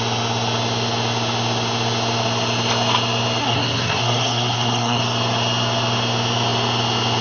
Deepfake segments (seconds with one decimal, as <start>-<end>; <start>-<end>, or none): 3.4-5.0